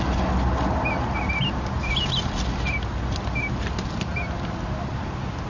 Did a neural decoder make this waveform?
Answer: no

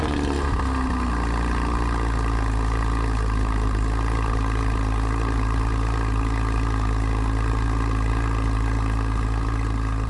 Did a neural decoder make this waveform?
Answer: no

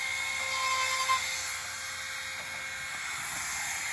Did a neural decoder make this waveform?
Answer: no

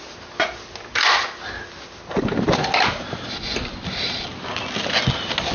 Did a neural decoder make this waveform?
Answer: no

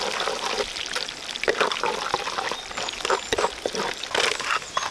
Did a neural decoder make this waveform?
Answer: no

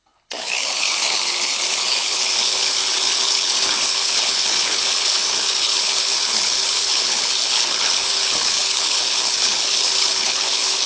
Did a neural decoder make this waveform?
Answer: yes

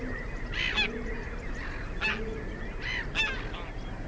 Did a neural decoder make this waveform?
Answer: no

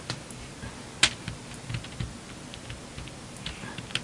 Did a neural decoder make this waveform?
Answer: no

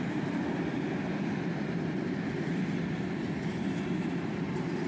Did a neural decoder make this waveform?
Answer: no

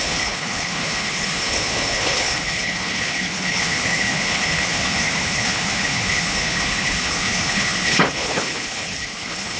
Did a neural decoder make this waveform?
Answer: yes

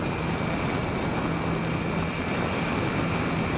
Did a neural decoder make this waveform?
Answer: no